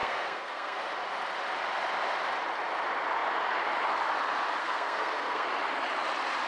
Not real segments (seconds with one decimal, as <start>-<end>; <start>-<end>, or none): 0.0-0.8; 4.6-5.5